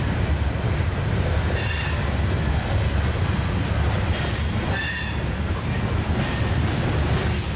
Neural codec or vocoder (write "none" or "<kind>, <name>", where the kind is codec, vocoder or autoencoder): none